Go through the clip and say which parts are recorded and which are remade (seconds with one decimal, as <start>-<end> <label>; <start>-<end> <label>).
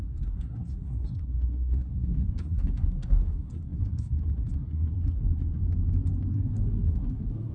0.0-5.6 remade; 5.6-6.3 recorded; 6.3-7.5 remade